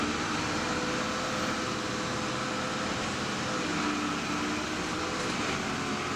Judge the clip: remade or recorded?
recorded